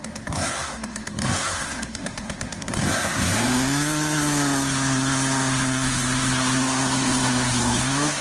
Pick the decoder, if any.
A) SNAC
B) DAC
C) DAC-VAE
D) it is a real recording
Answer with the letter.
A